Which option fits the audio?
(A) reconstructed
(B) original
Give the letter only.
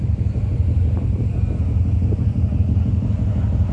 B